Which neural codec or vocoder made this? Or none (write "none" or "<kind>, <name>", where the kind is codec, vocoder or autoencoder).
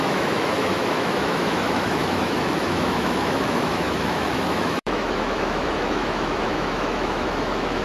autoencoder, DAC-VAE